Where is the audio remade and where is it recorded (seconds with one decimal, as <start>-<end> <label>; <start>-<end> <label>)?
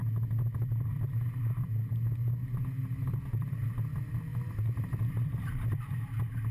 0.0-4.3 recorded; 4.3-6.0 remade; 6.0-6.5 recorded